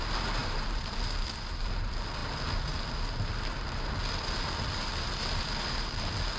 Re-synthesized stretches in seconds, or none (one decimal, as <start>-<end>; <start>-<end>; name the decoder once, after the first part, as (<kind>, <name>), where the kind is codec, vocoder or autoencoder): 0.4-0.9 (vocoder, BigVGAN v2)